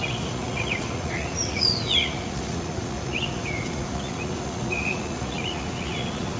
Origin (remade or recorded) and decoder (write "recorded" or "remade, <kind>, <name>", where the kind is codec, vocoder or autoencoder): remade, vocoder, Vocos